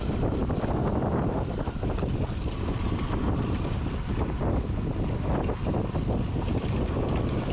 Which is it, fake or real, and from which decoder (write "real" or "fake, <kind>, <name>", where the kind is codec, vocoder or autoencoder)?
real